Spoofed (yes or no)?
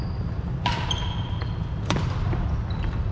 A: no